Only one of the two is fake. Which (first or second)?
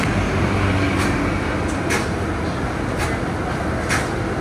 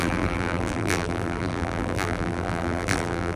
second